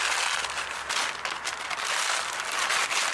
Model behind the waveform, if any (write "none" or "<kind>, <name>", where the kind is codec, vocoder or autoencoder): none